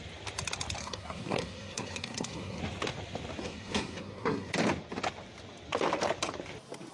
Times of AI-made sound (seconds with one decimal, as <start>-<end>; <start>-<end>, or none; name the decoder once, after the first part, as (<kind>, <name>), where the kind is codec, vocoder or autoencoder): 0.8-2.6 (codec, SNAC); 3.4-4.5